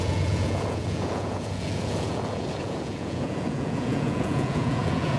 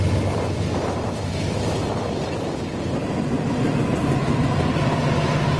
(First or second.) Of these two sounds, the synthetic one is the first